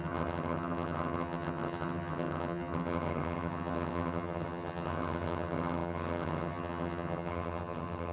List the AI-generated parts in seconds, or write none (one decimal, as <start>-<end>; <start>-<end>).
0.0-8.1